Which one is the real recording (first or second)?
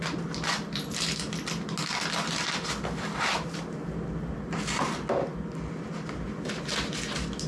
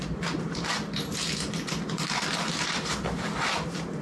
first